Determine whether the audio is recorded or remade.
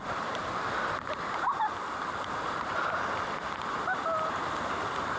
recorded